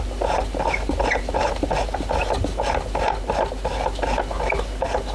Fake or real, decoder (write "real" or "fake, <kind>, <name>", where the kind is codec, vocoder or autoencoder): real